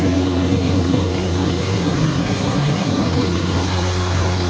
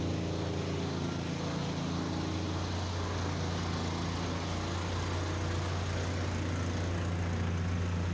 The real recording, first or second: second